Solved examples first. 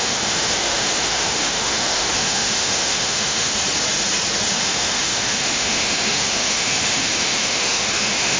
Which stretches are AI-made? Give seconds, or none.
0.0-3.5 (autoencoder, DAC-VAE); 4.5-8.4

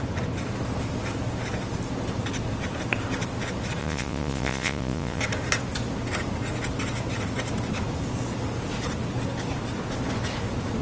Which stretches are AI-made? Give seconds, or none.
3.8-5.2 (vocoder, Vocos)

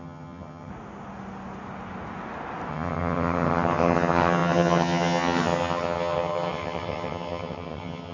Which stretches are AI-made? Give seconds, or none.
0.0-0.7 (vocoder, HiFi-GAN); 2.7-8.1

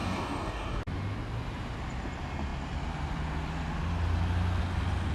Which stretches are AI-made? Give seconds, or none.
0.0-0.8 (codec, DAC)

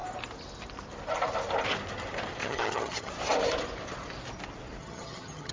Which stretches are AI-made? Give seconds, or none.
2.4-3.1 (vocoder, HiFi-GAN); 4.8-5.5